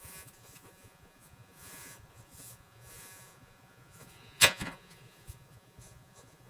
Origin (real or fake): fake